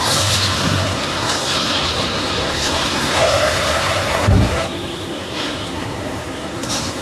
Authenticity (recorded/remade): remade